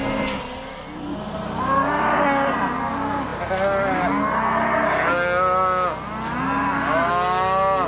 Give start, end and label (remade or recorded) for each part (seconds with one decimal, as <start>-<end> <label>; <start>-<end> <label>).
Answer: 0.0-7.9 recorded